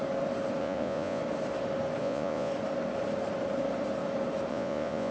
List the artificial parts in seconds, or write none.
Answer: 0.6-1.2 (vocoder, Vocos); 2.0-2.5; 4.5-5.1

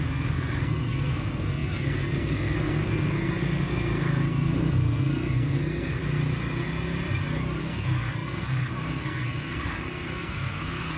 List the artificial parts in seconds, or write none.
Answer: 0.0-6.0 (codec, SNAC); 7.6-11.0

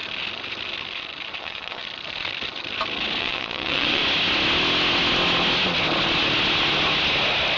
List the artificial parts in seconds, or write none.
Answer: 1.4-1.8 (vocoder, WaveNeXt); 3.2-4.0

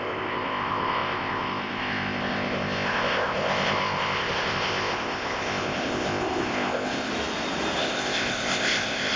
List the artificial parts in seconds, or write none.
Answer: 0.0-7.1 (codec, ZipCodec); 7.8-9.2

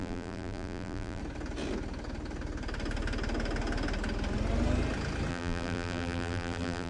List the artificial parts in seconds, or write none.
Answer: 0.0-1.2 (vocoder, BigVGAN v2); 5.3-6.9

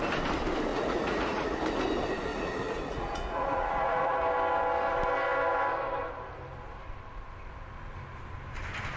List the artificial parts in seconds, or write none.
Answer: 0.7-1.6 (vocoder, Vocos); 2.3-4.2